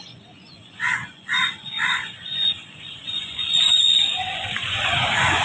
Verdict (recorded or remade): remade